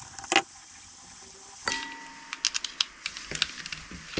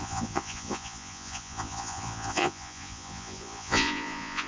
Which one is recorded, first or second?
first